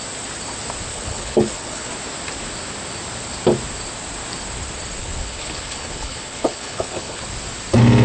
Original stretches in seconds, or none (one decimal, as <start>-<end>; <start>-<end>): 0.0-0.9; 1.9-5.0; 7.2-8.0